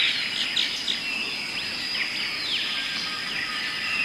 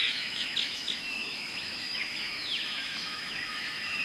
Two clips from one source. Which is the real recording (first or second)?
first